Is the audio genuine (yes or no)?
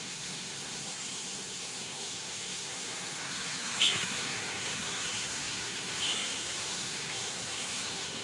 no